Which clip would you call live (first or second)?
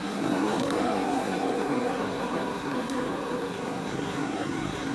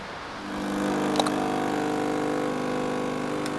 second